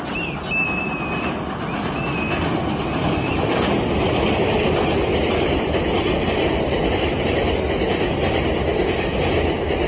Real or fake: real